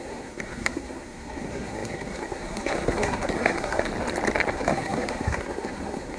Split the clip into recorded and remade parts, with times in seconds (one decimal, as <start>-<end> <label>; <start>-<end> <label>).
0.0-3.9 remade; 3.9-4.5 recorded; 4.5-6.2 remade